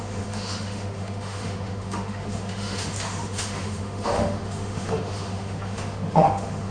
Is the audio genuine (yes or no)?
no